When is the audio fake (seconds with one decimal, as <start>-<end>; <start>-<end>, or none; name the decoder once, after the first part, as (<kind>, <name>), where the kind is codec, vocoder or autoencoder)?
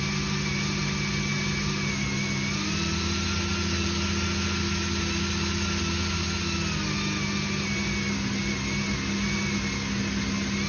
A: none